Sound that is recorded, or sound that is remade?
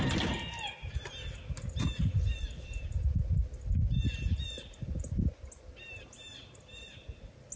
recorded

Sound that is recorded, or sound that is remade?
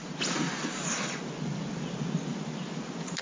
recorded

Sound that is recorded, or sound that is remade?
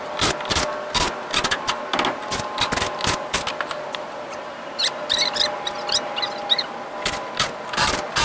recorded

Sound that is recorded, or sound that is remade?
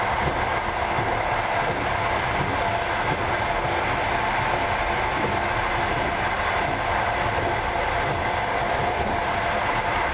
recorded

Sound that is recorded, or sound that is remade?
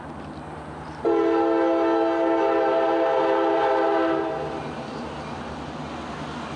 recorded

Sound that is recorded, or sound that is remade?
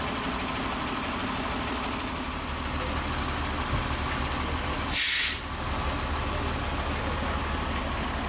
recorded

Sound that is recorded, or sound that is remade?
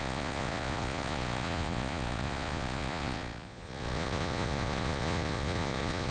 remade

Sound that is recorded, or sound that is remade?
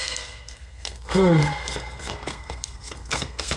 remade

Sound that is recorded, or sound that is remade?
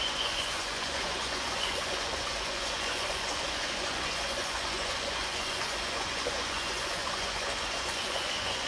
remade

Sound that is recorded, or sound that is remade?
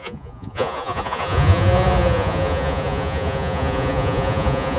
remade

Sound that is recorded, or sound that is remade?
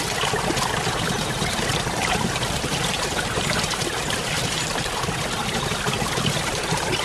recorded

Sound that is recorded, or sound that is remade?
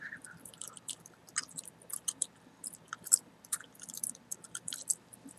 remade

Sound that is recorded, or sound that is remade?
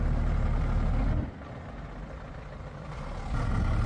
recorded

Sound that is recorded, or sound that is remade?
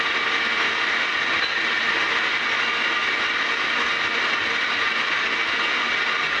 recorded